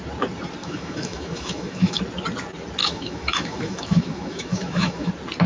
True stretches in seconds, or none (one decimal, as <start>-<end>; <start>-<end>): 0.0-0.6; 2.0-2.8; 5.1-5.5

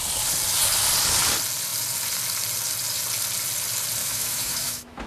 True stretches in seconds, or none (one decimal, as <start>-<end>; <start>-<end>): 0.0-4.0

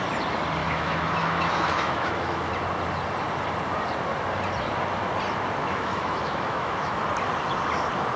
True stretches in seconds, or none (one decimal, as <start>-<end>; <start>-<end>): 0.0-0.6; 2.5-5.6; 7.0-8.2

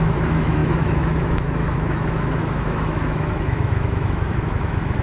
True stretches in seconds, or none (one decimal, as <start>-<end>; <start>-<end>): none

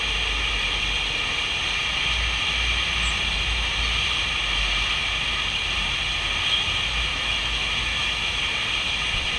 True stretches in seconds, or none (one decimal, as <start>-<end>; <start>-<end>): 0.0-7.1; 8.4-9.4

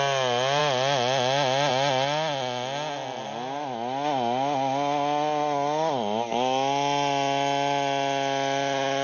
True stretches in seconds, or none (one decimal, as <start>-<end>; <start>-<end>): 0.0-9.0